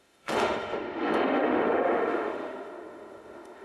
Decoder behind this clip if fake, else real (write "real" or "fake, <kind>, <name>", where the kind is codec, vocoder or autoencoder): fake, autoencoder, DAC-VAE